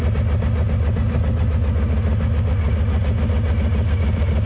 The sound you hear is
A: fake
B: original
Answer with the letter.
B